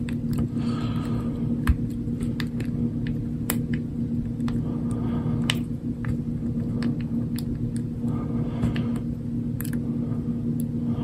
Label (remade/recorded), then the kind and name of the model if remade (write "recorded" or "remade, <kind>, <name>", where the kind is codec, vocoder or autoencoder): recorded